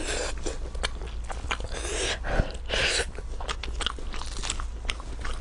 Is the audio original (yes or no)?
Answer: yes